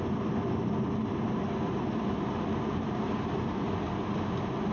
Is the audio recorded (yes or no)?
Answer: yes